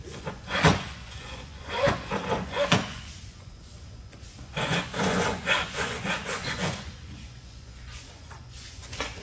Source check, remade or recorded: remade